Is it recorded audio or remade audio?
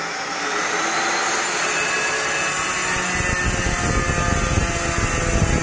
recorded